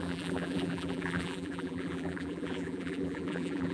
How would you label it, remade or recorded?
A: remade